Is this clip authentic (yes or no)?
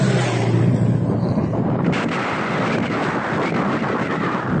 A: yes